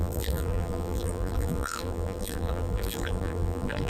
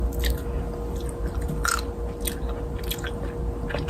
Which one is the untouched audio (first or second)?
second